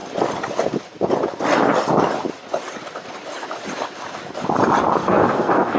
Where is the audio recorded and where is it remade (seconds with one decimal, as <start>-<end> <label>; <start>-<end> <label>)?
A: 0.0-5.0 recorded; 5.0-5.8 remade